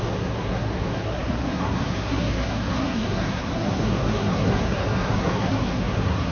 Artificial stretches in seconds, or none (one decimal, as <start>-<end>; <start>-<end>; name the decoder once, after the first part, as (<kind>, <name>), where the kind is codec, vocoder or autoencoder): 0.0-6.3 (codec, SNAC)